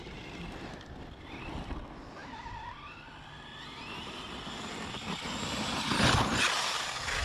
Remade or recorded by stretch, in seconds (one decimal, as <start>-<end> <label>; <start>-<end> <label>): 0.0-7.2 recorded